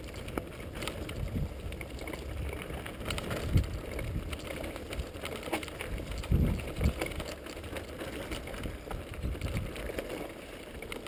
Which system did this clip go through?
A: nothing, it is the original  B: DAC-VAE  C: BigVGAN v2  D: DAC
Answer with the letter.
A